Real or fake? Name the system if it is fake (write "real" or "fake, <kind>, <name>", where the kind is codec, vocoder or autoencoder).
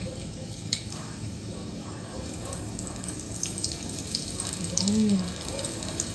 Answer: fake, codec, DAC